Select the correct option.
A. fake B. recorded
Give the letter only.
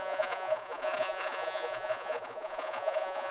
A